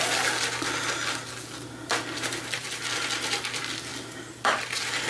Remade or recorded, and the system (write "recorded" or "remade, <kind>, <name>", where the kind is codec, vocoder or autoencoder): recorded